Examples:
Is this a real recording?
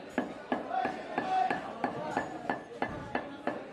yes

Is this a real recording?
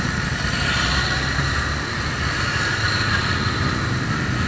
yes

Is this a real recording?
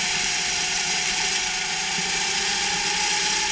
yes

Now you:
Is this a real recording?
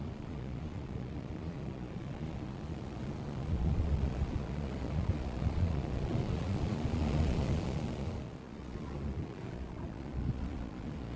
no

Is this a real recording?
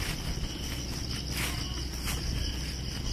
yes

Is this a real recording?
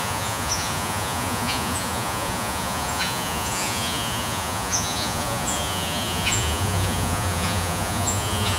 no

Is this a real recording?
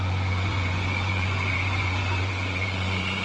no